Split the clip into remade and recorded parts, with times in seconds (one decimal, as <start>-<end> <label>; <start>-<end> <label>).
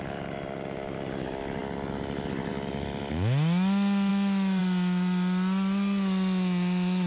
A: 0.0-7.1 recorded